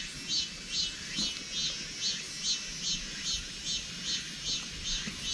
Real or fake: real